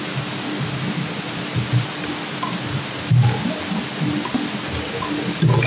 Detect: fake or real real